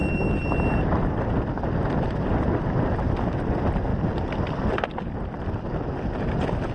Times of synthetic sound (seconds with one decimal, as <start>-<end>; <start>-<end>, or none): none